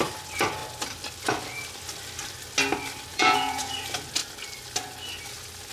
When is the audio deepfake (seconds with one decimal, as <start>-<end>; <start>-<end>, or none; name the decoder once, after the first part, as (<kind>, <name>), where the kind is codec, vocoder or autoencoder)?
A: 3.1-3.7 (vocoder, Vocos)